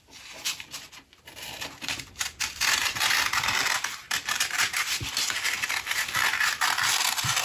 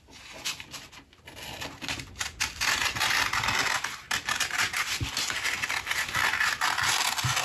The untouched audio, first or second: second